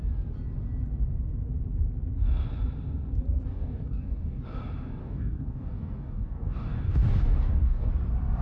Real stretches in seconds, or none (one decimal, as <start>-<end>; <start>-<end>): 0.0-3.5; 4.4-5.0; 7.9-8.4